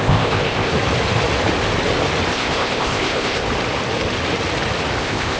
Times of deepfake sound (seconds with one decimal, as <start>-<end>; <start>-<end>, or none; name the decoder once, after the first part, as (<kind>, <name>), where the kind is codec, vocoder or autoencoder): 0.0-0.7 (codec, ZipCodec); 2.3-3.4; 5.0-5.4